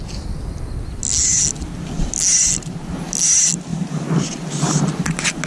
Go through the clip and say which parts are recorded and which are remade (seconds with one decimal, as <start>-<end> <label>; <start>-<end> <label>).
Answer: 0.0-3.7 recorded; 3.7-4.3 remade; 4.3-5.5 recorded